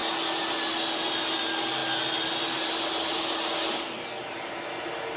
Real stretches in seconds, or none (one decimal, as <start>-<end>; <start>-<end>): 0.0-5.2